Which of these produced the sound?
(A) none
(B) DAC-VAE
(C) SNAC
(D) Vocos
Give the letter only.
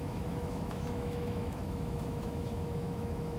B